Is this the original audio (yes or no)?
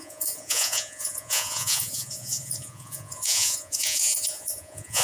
no